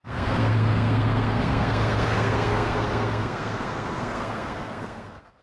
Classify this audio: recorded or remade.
remade